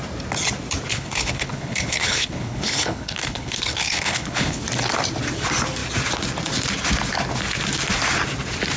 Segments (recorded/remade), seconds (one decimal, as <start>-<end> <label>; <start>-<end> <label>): 0.0-0.9 recorded; 0.9-4.6 remade; 4.6-8.8 recorded